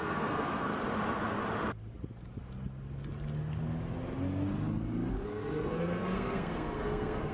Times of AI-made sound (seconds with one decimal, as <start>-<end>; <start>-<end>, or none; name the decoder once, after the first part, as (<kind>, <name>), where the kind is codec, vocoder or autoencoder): 0.0-0.7 (codec, SNAC); 5.1-7.3